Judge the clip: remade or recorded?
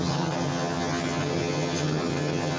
remade